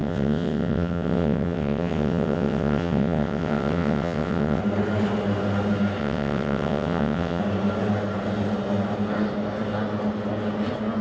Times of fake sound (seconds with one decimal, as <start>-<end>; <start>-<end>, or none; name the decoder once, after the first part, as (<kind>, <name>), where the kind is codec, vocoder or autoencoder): 0.0-4.6 (vocoder, WaveNeXt); 6.0-7.4